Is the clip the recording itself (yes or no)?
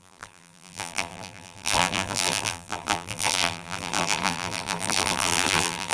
no